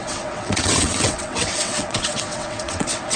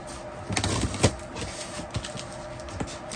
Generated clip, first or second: first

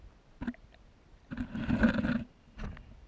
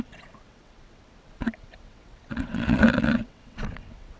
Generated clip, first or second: second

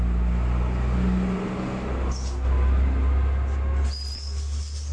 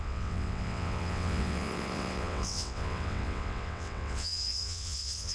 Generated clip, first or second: second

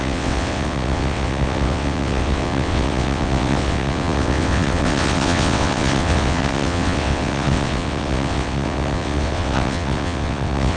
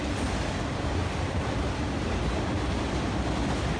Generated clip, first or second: first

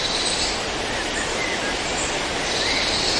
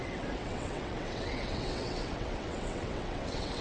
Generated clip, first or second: second